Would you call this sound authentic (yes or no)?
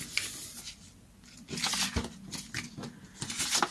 yes